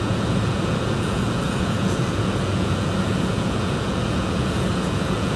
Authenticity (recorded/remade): remade